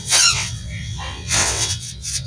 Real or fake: fake